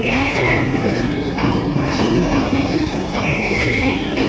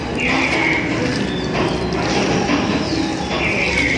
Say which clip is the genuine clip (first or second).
second